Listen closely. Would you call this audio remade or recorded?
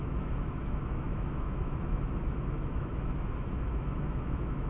remade